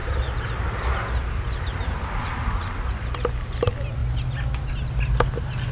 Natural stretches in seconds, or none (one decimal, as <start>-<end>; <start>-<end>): 0.9-5.7